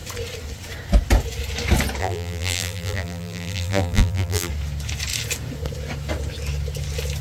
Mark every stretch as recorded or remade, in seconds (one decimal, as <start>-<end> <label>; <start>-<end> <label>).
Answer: 0.0-2.0 recorded; 2.0-4.5 remade; 4.5-7.2 recorded